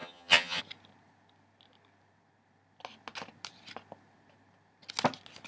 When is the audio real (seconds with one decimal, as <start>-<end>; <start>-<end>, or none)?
0.6-5.5